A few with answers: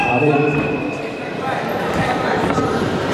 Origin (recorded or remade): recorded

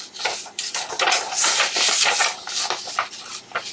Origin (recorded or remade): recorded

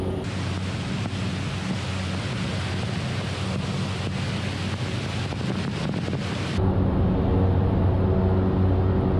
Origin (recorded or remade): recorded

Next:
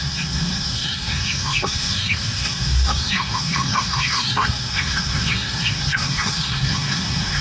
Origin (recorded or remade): remade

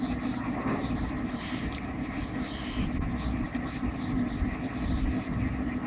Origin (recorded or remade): recorded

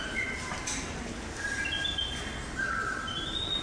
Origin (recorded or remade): recorded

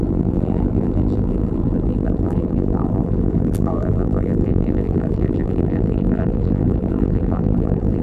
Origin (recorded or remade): remade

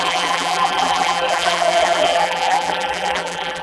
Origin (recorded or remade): remade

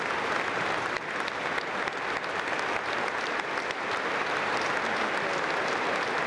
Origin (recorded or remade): recorded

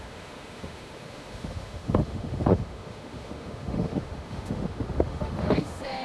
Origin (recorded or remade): remade